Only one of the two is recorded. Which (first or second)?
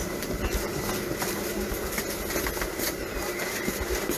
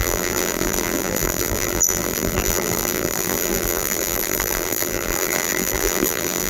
first